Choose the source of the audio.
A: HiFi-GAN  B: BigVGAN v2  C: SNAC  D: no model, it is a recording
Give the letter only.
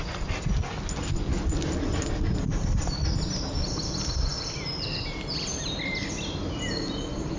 D